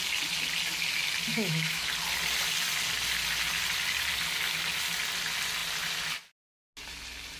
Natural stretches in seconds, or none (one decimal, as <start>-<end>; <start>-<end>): 0.0-1.3; 1.9-7.4